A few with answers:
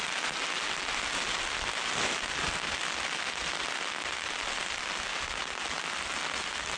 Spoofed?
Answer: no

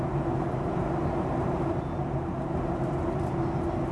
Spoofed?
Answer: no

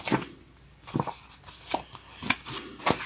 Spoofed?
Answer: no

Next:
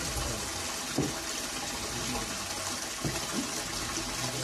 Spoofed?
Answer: no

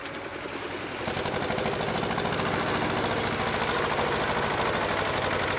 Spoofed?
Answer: no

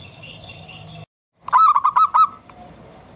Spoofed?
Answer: no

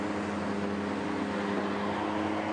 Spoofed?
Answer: no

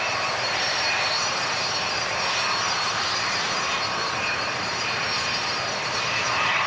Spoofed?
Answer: yes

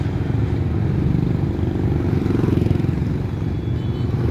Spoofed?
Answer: no